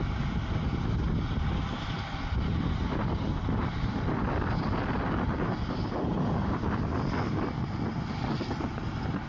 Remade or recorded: recorded